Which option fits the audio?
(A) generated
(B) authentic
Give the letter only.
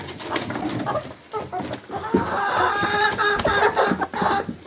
B